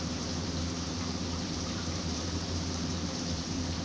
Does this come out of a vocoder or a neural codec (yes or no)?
yes